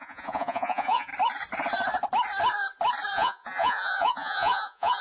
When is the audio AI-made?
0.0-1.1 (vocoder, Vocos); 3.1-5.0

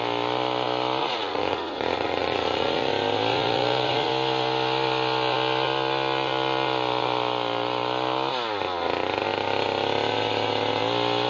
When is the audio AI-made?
1.0-2.9 (vocoder, Vocos); 3.3-4.1

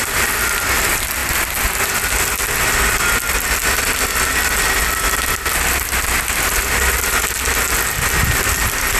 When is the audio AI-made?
none